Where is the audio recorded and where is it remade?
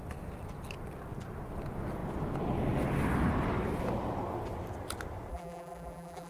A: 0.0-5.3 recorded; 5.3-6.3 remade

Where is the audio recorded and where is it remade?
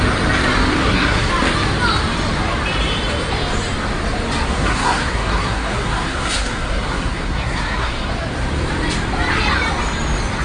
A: 0.0-0.8 recorded; 0.8-1.3 remade; 1.3-4.5 recorded; 4.5-8.1 remade; 8.1-10.4 recorded